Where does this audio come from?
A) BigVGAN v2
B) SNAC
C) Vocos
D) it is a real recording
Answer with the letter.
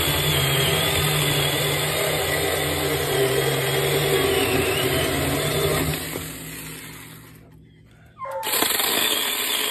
D